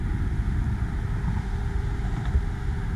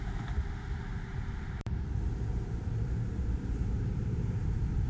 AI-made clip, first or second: second